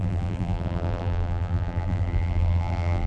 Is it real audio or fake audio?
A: fake